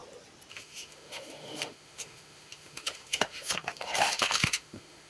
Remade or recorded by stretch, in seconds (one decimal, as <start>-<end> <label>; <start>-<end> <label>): 0.0-0.5 recorded; 0.5-5.1 remade